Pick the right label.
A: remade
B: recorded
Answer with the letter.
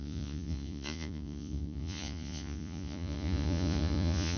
A